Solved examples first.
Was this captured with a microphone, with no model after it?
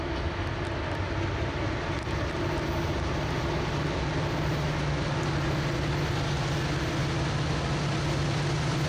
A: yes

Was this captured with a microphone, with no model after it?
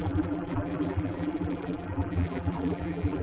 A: no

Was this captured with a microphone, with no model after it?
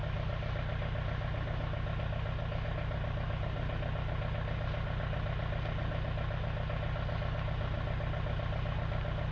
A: yes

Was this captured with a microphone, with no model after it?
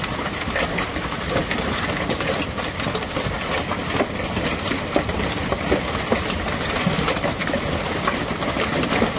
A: yes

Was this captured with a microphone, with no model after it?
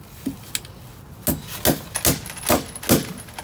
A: yes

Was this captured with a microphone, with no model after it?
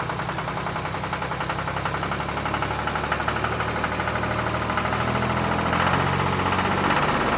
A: yes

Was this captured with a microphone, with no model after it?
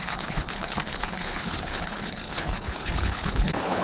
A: no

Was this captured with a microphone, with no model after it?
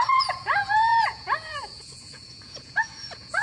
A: no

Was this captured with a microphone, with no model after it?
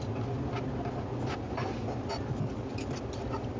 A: yes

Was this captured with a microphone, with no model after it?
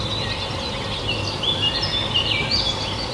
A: yes